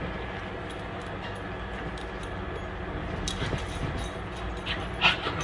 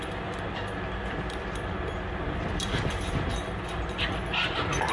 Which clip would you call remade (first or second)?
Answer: second